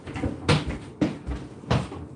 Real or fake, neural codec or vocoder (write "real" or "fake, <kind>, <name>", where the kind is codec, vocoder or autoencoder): real